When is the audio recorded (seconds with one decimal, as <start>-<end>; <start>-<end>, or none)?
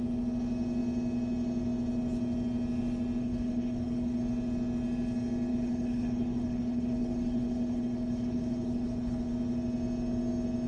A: 0.0-3.2; 4.2-5.5; 9.3-10.7